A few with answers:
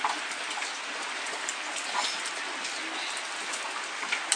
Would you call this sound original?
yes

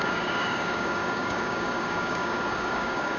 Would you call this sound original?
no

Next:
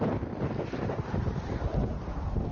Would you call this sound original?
yes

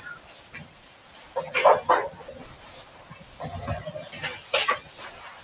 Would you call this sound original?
yes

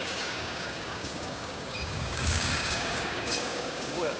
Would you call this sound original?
no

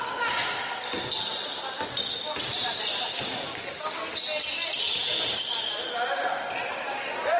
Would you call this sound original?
yes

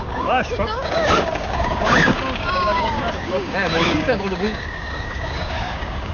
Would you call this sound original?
no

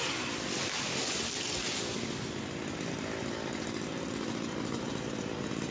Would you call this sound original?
yes